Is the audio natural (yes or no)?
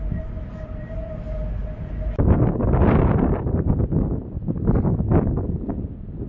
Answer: yes